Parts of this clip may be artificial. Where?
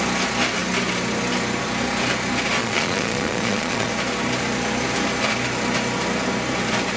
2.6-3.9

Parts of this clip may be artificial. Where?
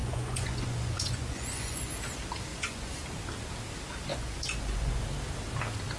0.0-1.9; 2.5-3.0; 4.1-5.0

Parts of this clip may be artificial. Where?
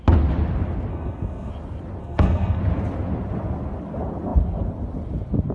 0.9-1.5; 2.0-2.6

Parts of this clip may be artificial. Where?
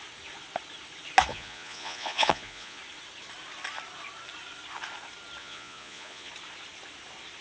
1.3-2.8; 5.4-6.3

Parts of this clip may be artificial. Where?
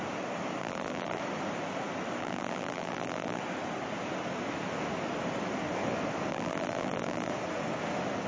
0.6-1.2; 2.2-3.4; 6.3-7.3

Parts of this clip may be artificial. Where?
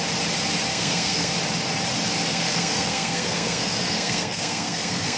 0.7-1.3; 2.3-5.2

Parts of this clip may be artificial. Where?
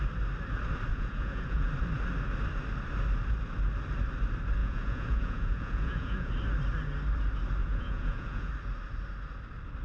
0.9-1.7; 4.6-6.3; 7.6-8.5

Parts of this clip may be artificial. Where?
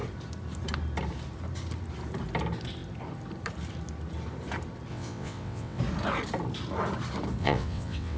4.9-5.8; 7.4-8.2